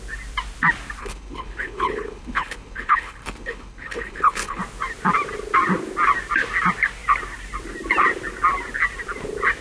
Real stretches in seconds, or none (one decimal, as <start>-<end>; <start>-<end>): 0.0-1.0; 4.6-9.6